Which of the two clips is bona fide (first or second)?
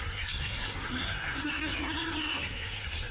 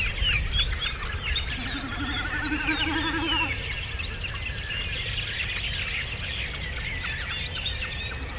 second